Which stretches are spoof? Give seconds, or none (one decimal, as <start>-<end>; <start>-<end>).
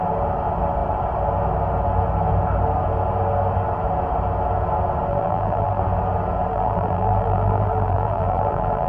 5.1-5.8; 6.5-8.9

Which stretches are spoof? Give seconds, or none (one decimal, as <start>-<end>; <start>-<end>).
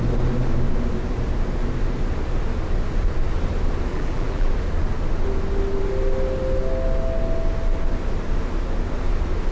3.9-4.5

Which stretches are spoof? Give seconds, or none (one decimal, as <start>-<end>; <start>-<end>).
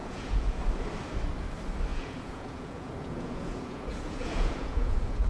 0.0-0.6; 1.9-5.3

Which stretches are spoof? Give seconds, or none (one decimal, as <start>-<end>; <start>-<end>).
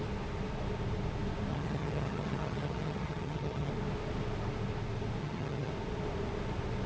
1.5-3.7; 5.2-5.7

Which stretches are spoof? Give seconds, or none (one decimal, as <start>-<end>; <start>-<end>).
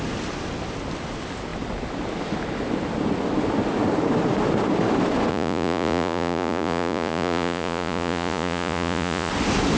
5.3-9.3